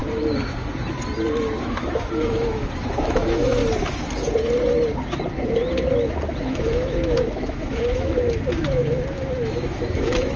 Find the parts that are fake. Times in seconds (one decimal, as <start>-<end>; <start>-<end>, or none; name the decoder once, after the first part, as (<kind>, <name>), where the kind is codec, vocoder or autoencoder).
1.6-3.6 (autoencoder, DAC-VAE); 6.4-10.4